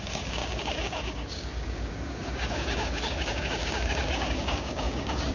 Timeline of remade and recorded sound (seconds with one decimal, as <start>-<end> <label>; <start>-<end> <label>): 0.0-5.3 remade